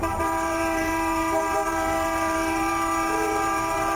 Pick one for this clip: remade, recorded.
remade